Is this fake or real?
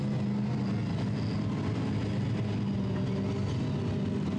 real